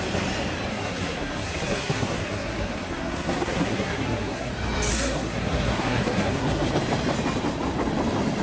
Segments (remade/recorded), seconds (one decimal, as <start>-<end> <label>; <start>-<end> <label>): 0.0-0.7 recorded; 0.7-4.5 remade; 4.5-4.9 recorded; 4.9-6.7 remade; 6.7-8.4 recorded